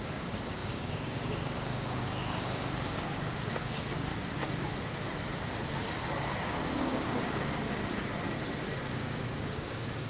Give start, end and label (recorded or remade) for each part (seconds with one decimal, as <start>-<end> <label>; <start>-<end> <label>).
0.0-4.1 remade; 4.1-6.4 recorded; 6.4-7.8 remade; 7.8-8.9 recorded; 8.9-10.1 remade